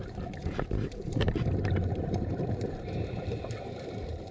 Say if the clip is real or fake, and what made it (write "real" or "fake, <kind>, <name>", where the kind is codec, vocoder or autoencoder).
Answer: fake, vocoder, BigVGAN v2